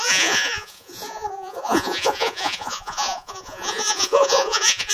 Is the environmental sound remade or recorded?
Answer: remade